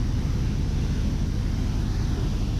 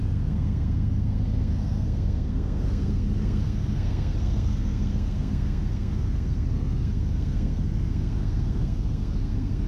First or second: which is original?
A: first